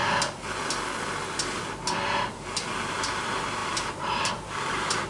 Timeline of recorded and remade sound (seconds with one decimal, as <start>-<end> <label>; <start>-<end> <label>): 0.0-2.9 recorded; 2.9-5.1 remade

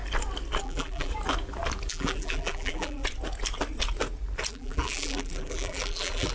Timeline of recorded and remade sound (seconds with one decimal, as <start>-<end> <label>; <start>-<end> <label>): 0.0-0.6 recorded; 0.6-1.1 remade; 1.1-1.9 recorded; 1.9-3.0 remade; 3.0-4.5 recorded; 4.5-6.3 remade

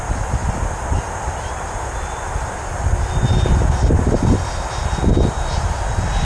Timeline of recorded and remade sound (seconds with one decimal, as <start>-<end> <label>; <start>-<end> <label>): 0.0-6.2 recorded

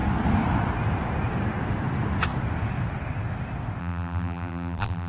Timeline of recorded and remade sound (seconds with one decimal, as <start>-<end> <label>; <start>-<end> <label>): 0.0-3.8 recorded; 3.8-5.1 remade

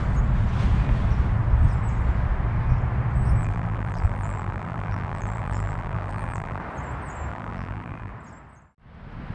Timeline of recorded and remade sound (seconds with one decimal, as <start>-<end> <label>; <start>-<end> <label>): 0.0-3.4 recorded; 3.4-6.6 remade; 6.6-7.3 recorded; 7.3-8.1 remade; 8.1-9.3 recorded

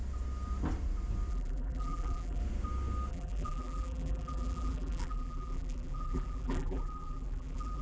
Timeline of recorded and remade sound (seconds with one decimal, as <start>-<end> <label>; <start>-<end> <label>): 0.0-1.3 recorded; 1.3-2.4 remade; 2.4-3.1 recorded; 3.1-7.8 remade

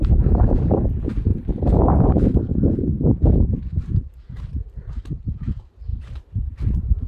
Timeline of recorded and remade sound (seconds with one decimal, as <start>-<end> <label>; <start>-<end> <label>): 0.0-1.3 remade; 1.3-1.8 recorded; 1.8-7.1 remade

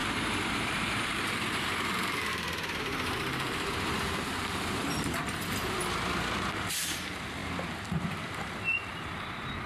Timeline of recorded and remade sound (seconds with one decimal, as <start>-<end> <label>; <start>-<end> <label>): 0.0-0.5 recorded; 0.5-7.4 remade; 7.4-7.9 recorded; 7.9-9.7 remade